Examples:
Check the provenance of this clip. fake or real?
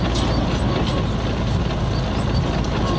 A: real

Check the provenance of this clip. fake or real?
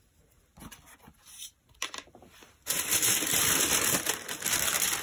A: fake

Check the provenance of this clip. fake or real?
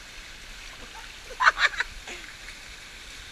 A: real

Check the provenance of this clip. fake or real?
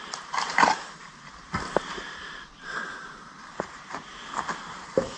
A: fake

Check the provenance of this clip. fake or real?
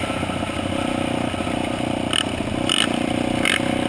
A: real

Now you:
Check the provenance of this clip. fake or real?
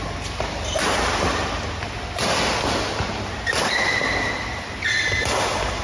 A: real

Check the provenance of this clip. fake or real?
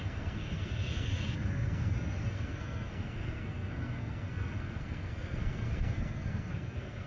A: fake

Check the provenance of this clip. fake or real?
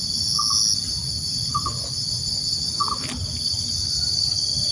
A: real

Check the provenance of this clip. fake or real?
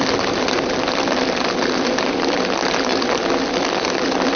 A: real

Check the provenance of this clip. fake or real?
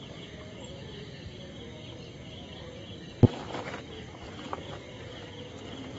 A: real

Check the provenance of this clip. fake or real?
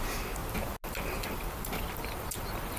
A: real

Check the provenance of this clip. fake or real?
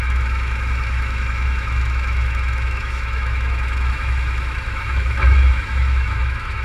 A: fake